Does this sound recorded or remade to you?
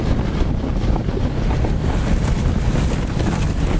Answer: recorded